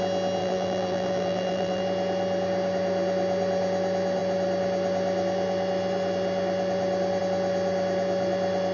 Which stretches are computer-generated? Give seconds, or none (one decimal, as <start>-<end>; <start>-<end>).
0.4-1.8

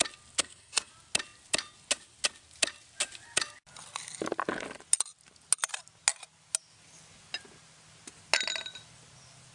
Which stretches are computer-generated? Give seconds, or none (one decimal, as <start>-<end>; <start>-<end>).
0.4-0.9

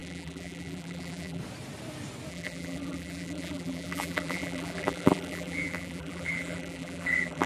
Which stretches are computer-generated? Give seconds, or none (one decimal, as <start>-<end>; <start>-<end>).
0.0-1.4; 2.3-7.5